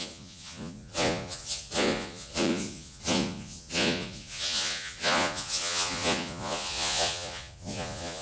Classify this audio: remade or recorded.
remade